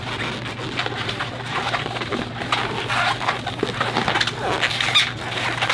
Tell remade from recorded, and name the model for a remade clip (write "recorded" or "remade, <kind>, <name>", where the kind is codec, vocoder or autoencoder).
recorded